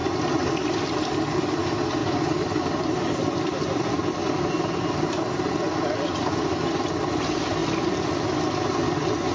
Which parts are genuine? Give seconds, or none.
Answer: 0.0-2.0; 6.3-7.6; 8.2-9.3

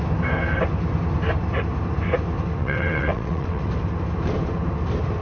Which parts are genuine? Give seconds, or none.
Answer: 0.0-2.6; 3.6-5.2

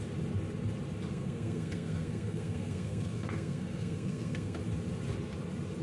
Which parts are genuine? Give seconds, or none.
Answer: 0.0-1.1; 4.6-5.8